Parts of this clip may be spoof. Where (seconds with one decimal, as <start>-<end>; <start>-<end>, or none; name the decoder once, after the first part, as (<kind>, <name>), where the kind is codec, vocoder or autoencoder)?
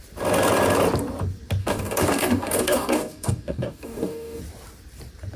1.6-4.4 (codec, DAC)